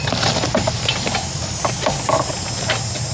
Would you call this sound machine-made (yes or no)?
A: no